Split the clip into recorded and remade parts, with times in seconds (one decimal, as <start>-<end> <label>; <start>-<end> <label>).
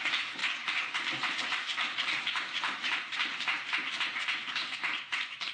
0.0-5.5 remade